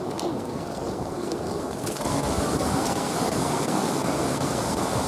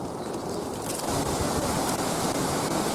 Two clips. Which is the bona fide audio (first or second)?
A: second